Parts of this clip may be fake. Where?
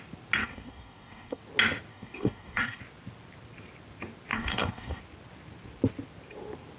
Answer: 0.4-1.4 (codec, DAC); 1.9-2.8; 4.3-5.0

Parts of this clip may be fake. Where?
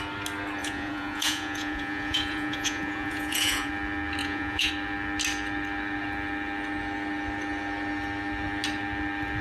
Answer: 0.6-3.7 (vocoder, Vocos); 4.2-4.7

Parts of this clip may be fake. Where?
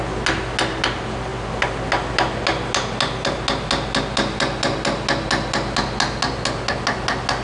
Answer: none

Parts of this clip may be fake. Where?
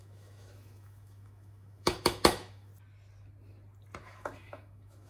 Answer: 0.0-2.7 (autoencoder, DAC-VAE); 4.0-5.1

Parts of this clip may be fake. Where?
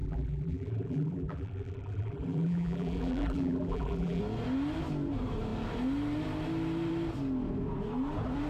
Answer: 0.0-4.2 (vocoder, BigVGAN v2)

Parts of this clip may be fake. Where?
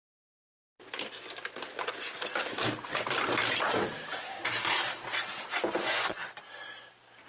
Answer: 5.8-6.3 (vocoder, Vocos)